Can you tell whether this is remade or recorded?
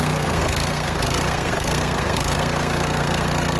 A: remade